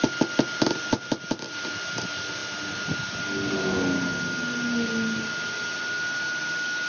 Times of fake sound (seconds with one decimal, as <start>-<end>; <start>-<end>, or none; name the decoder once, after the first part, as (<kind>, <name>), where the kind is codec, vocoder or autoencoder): none